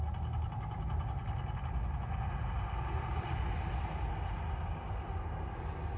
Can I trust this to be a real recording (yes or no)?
yes